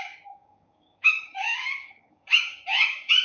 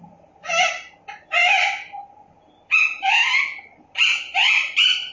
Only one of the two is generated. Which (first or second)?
first